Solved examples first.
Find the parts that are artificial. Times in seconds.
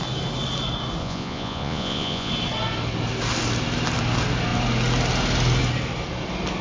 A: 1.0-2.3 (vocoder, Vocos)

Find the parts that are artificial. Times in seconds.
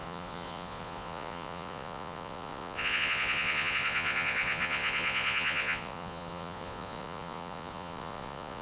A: 0.0-8.6 (vocoder, Vocos)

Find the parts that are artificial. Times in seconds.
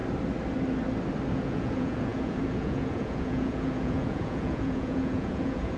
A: 1.3-5.8 (vocoder, Vocos)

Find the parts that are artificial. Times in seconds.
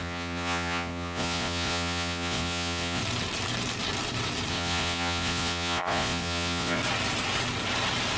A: 0.0-3.0 (vocoder, Vocos); 4.5-6.8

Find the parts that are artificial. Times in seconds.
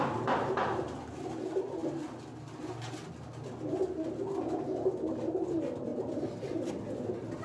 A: none